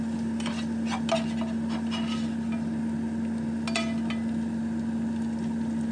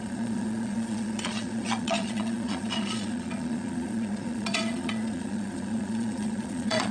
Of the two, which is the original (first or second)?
first